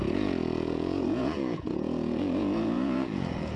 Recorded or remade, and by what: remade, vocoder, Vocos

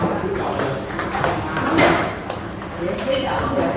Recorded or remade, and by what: recorded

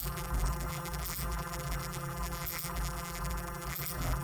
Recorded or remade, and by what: remade, vocoder, BigVGAN v2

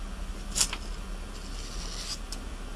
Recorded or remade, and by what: recorded